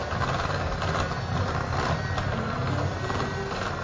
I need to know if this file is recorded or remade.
recorded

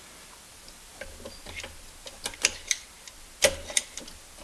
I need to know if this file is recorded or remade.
recorded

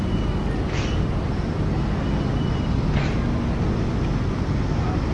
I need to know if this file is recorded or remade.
recorded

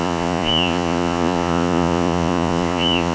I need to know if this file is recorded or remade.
remade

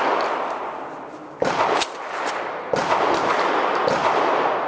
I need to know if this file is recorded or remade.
recorded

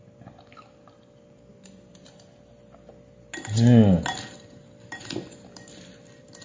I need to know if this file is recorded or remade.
recorded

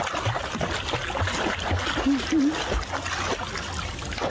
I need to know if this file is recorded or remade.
recorded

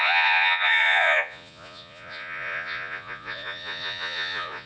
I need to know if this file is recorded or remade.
remade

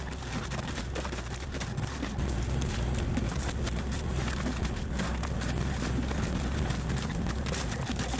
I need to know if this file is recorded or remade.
recorded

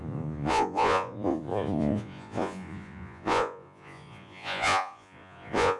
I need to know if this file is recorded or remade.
remade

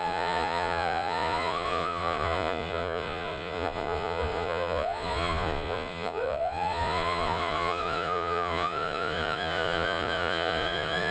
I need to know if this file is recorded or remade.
remade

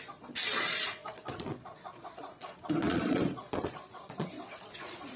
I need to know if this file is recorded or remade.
remade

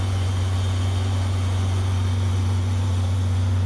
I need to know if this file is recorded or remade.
remade